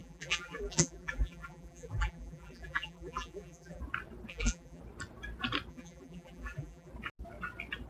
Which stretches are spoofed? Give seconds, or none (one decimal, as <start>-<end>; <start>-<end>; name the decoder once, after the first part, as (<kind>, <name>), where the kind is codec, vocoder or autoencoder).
0.0-3.8 (vocoder, BigVGAN v2); 4.3-4.8; 5.7-6.9